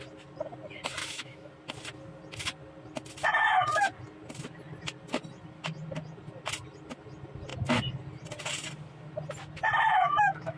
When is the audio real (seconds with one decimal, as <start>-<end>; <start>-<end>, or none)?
0.0-1.0; 1.5-9.9

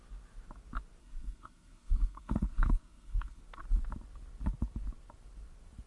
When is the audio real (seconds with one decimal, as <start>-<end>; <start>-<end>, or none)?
0.0-1.0; 3.4-5.9

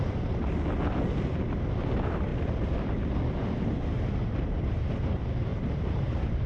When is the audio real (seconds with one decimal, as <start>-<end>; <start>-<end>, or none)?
0.0-5.5

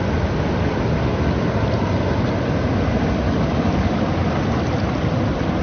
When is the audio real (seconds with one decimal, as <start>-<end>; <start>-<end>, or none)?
0.0-5.6

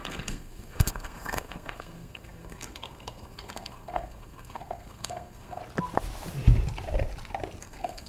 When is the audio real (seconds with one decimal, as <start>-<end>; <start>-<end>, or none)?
5.6-7.6

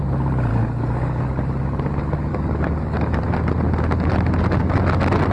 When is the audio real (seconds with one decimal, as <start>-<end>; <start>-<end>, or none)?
0.0-0.5; 1.2-2.3; 3.2-5.3

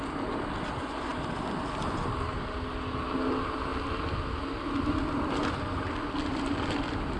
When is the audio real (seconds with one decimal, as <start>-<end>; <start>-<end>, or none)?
0.0-7.2

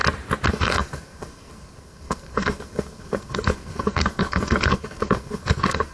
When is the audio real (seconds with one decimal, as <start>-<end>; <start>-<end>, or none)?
0.0-0.5